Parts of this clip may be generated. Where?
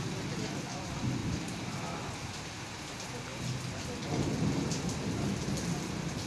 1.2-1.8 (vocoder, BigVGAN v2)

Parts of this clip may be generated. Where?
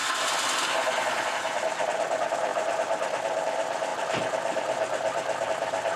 1.3-2.5 (vocoder, BigVGAN v2); 3.4-6.0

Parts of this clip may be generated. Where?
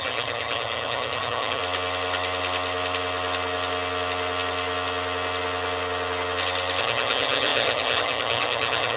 0.0-1.6 (vocoder, HiFi-GAN); 6.8-9.0